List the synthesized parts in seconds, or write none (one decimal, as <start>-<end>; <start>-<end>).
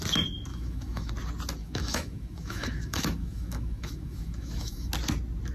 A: 0.5-1.1; 1.6-4.9